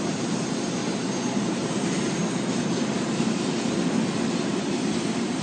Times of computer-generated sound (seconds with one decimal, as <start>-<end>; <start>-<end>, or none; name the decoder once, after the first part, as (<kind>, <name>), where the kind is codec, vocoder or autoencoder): 0.0-0.8 (vocoder, BigVGAN v2); 1.5-2.2; 2.9-3.5; 4.7-5.4